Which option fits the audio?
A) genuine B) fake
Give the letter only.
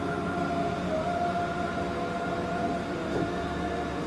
A